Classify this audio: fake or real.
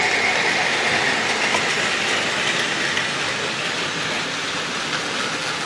real